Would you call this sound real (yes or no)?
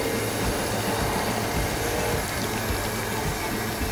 yes